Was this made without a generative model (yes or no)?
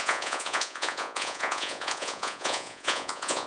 no